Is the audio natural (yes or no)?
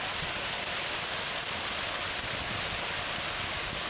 yes